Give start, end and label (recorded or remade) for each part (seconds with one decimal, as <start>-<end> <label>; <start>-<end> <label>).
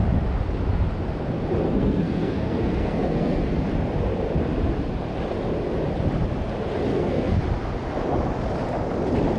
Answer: 0.0-1.6 recorded; 1.6-3.5 remade; 3.5-6.9 recorded; 6.9-7.4 remade; 7.4-9.4 recorded